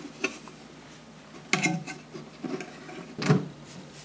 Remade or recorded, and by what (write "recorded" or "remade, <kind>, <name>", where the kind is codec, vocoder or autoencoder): recorded